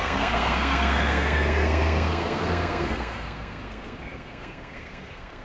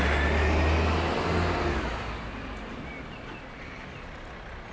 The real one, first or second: second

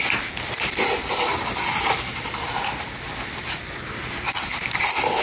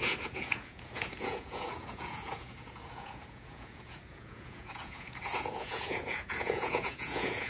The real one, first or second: first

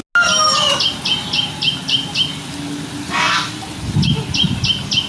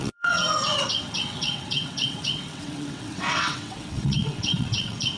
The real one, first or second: first